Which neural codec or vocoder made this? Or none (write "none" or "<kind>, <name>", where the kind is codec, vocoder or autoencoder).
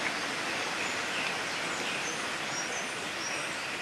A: none